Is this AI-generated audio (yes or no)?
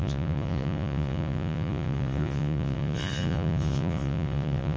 yes